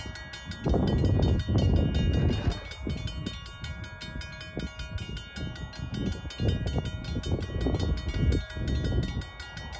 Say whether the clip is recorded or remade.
recorded